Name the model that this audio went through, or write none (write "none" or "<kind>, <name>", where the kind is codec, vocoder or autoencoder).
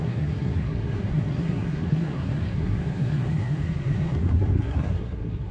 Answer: codec, SNAC